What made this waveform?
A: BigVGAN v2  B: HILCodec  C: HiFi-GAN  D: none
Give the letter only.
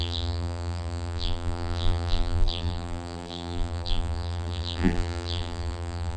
A